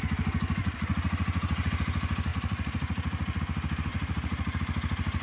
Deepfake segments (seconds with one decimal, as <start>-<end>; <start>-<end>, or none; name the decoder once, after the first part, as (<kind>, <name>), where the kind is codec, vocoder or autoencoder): 0.6-1.7 (vocoder, Vocos); 2.3-3.4; 3.9-4.6